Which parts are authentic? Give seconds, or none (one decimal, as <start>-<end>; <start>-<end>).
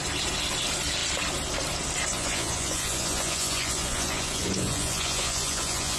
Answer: 0.0-2.1